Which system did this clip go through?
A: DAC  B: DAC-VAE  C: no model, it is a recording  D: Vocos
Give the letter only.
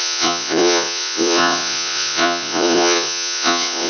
D